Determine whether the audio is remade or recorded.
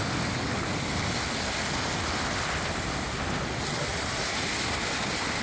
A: recorded